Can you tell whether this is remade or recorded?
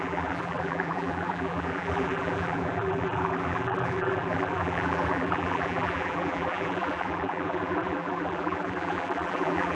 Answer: remade